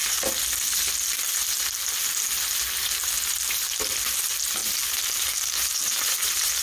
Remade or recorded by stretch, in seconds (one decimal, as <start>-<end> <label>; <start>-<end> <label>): 0.0-4.6 recorded; 4.6-6.6 remade